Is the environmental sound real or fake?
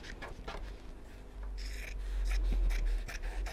real